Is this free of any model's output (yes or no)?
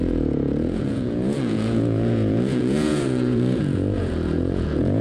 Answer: no